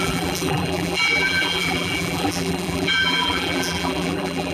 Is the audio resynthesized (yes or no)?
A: yes